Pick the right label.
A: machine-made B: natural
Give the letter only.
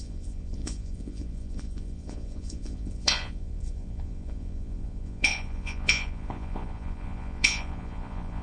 A